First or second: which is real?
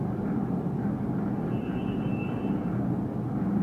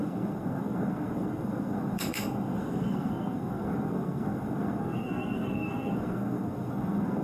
first